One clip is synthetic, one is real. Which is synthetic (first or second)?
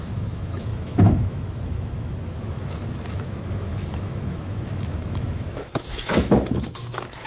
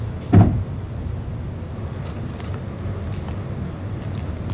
first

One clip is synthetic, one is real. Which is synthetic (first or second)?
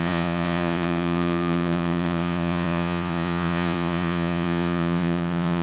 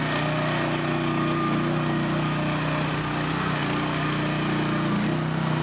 first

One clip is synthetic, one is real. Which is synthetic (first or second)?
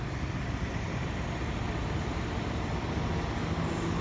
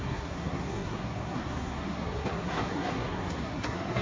second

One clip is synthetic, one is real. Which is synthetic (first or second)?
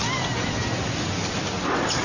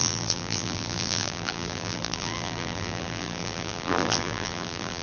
second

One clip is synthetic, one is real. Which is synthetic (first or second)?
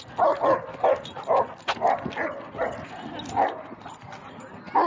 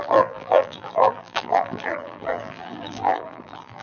second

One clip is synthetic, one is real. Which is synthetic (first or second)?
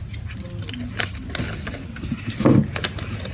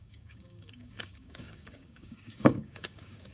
second